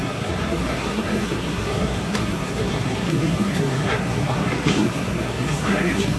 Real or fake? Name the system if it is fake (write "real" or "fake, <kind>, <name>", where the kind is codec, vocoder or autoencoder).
fake, codec, SNAC